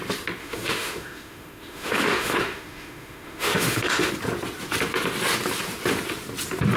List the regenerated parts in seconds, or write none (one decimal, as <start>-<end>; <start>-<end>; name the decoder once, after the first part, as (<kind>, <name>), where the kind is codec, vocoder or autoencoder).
0.4-4.1 (autoencoder, DAC-VAE)